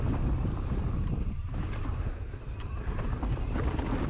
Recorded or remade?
recorded